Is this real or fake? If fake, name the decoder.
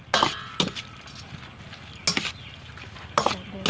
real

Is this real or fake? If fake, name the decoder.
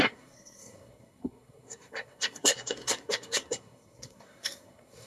fake, codec, SNAC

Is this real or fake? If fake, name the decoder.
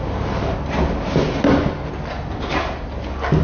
real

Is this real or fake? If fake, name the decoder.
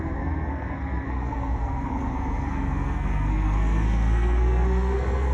fake, codec, SNAC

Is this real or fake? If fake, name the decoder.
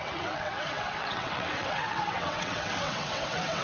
fake, vocoder, WaveNeXt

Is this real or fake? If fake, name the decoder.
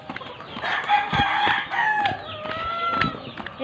real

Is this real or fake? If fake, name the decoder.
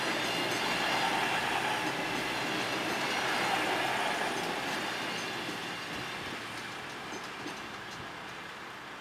real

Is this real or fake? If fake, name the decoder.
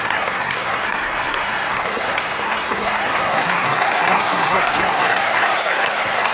fake, codec, SNAC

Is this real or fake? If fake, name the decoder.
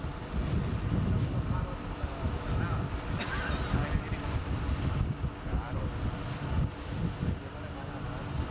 real